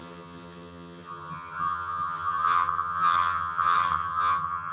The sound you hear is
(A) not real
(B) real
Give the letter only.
A